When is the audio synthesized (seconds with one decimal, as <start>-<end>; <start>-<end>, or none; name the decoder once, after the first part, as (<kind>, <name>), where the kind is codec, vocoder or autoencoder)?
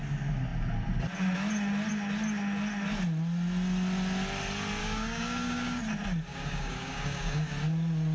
4.8-5.8 (codec, DAC); 6.3-7.5